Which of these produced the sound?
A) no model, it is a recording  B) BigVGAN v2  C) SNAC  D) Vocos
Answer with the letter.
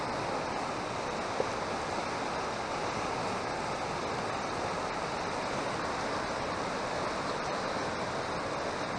A